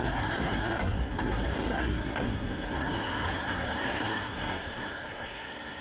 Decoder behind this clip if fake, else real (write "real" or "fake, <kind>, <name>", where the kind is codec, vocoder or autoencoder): fake, codec, SNAC